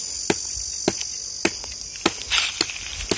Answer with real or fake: real